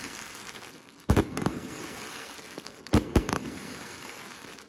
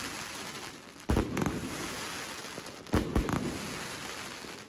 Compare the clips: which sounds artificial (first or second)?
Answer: first